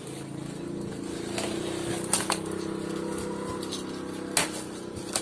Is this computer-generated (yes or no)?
no